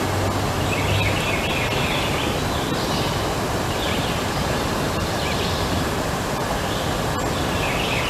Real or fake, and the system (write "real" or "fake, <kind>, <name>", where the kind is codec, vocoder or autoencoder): real